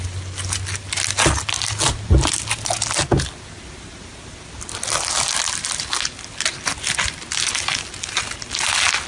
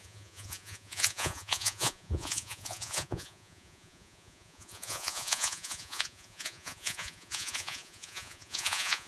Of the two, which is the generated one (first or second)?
second